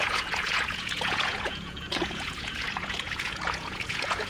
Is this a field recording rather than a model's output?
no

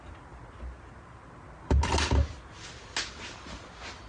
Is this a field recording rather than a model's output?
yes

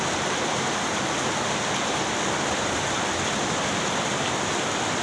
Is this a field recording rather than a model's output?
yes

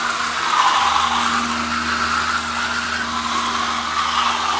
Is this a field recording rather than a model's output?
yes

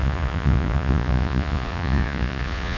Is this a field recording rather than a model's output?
no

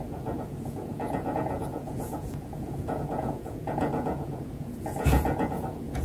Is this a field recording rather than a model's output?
no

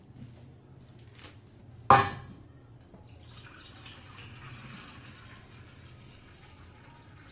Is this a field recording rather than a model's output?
yes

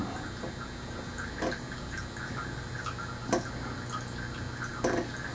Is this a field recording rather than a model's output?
yes